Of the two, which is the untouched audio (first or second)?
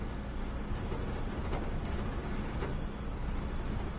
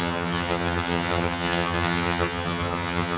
first